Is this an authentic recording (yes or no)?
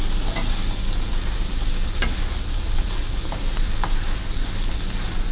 yes